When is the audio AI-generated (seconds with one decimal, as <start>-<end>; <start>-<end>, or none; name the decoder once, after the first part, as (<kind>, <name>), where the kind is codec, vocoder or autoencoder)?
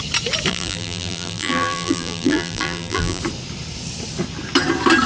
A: 0.5-3.2 (vocoder, BigVGAN v2)